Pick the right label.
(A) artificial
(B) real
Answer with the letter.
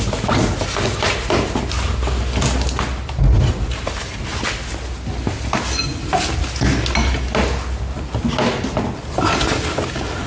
B